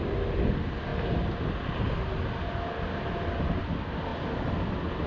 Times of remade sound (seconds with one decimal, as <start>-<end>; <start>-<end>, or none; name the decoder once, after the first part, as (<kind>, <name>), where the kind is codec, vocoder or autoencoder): none